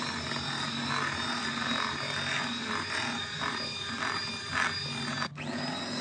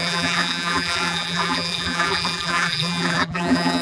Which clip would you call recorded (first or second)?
first